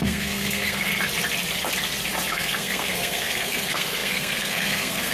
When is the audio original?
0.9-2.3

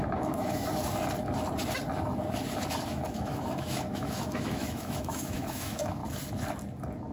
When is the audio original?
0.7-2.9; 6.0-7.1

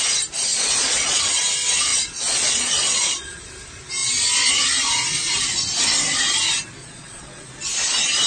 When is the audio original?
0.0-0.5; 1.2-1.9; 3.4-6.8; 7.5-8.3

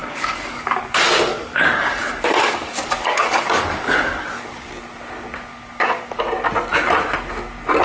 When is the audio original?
0.8-1.3; 4.7-5.5; 6.2-7.8

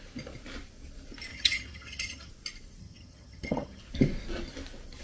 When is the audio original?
0.0-1.3; 2.3-2.8; 3.8-5.0